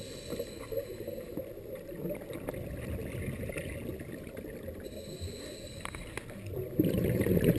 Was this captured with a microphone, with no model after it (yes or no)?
yes